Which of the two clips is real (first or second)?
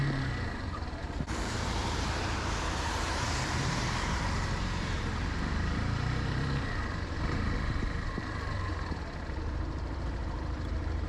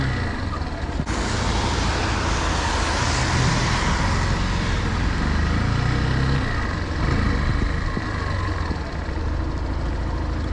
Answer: second